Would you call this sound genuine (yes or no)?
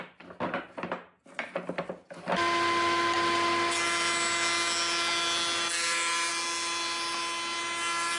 yes